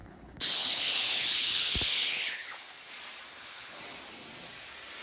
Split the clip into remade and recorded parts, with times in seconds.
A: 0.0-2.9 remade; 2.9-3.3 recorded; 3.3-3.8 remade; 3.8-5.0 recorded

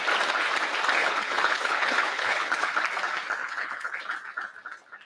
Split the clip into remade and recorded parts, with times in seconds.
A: 0.0-1.0 recorded; 1.0-2.7 remade; 2.7-3.4 recorded; 3.4-4.0 remade; 4.0-5.0 recorded

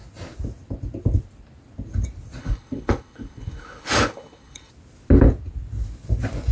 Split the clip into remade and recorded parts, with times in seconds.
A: 0.0-2.4 recorded; 2.4-4.7 remade; 4.7-6.5 recorded

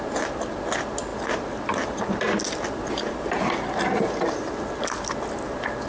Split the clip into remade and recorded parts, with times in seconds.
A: 0.0-5.9 recorded